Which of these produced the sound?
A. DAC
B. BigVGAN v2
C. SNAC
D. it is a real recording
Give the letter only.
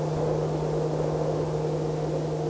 D